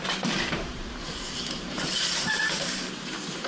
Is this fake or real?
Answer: fake